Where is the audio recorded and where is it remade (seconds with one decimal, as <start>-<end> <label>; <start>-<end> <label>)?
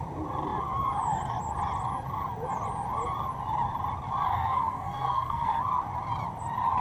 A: 0.0-4.3 recorded; 4.3-5.6 remade; 5.6-6.8 recorded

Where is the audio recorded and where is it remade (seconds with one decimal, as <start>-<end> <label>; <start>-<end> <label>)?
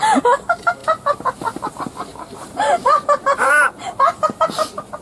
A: 0.0-2.1 recorded; 2.1-3.7 remade; 3.7-5.0 recorded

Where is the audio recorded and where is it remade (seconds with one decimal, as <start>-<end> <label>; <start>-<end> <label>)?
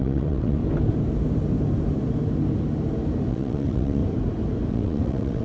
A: 0.0-0.6 remade; 0.6-3.3 recorded; 3.3-4.0 remade; 4.0-4.7 recorded; 4.7-5.4 remade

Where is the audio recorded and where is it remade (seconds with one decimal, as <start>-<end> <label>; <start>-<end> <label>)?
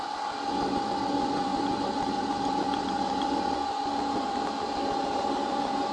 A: 0.0-5.9 recorded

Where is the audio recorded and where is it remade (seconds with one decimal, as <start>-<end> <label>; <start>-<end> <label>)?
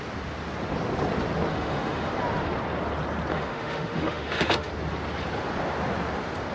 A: 0.0-1.5 recorded; 1.5-2.1 remade; 2.1-3.3 recorded; 3.3-4.7 remade; 4.7-6.5 recorded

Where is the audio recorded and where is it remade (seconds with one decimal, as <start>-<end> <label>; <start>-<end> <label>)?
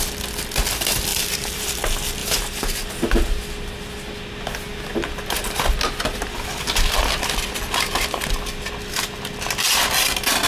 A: 0.0-1.1 recorded; 1.1-1.7 remade; 1.7-2.2 recorded; 2.2-2.9 remade; 2.9-10.5 recorded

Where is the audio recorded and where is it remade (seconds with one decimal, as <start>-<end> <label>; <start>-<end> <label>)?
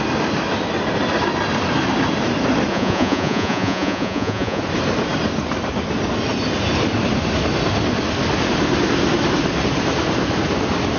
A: 0.0-2.7 recorded; 2.7-4.6 remade; 4.6-11.0 recorded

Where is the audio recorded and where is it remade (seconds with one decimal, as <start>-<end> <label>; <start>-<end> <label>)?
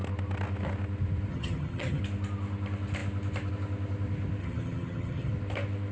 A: 0.0-1.3 recorded; 1.3-2.0 remade; 2.0-4.4 recorded; 4.4-5.3 remade; 5.3-5.9 recorded